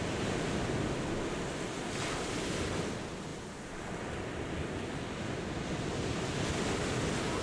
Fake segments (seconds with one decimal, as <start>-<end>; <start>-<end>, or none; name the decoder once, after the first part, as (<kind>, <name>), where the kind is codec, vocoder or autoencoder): none

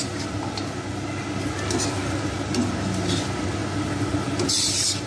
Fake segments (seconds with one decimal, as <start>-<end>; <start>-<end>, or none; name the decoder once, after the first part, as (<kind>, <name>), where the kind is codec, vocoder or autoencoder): none